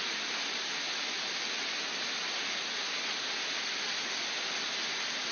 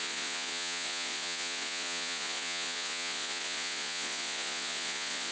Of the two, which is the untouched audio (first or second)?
first